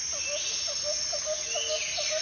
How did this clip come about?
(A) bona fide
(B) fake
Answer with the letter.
A